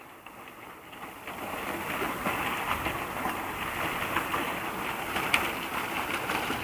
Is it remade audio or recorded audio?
recorded